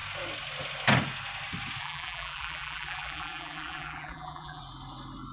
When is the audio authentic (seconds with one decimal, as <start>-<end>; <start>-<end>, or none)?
0.0-1.8; 4.6-5.3